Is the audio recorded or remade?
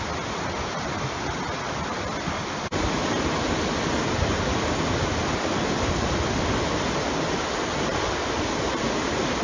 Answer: recorded